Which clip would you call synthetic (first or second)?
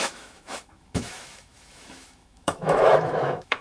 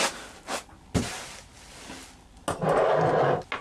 first